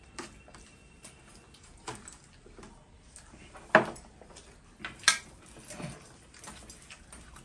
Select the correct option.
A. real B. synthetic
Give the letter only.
A